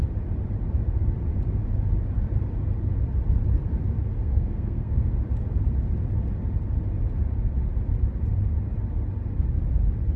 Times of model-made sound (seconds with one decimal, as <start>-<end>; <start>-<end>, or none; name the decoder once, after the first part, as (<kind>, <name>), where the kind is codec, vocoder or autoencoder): 4.2-5.1 (codec, SNAC)